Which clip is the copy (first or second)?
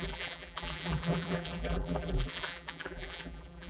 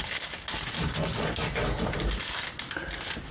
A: first